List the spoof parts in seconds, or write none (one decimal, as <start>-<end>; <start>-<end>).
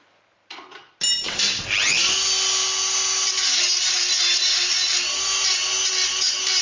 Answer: none